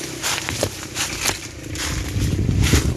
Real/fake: real